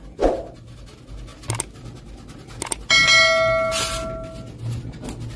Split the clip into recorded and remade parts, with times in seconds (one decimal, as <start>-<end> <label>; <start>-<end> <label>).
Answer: 0.0-5.4 recorded